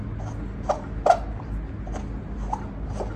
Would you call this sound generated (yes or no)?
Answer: no